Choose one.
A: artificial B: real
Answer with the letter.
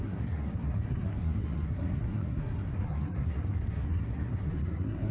A